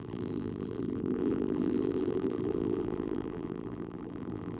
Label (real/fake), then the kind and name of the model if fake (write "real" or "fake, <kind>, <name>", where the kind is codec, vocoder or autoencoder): fake, vocoder, BigVGAN v2